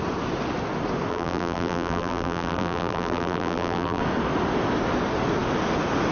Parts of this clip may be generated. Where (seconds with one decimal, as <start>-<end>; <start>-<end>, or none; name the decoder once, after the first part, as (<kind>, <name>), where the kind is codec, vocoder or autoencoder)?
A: 1.1-4.0 (vocoder, BigVGAN v2)